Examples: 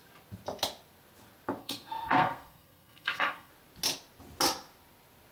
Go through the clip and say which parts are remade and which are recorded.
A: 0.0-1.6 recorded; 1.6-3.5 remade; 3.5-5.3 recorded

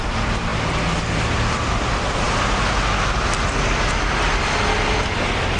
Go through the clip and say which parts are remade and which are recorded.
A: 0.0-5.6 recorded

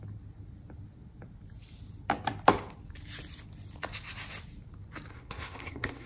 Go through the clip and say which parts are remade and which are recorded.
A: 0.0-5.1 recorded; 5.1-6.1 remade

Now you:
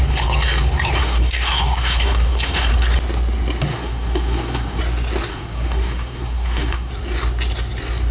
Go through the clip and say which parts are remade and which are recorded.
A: 0.0-1.0 recorded; 1.0-2.7 remade; 2.7-3.7 recorded; 3.7-4.8 remade; 4.8-5.3 recorded; 5.3-6.9 remade; 6.9-8.1 recorded

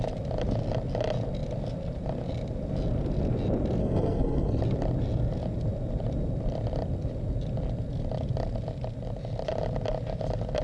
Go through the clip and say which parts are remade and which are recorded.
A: 0.0-3.8 recorded; 3.8-4.6 remade; 4.6-10.6 recorded